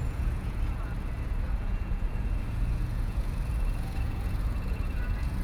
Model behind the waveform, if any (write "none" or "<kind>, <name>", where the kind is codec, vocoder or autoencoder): vocoder, Vocos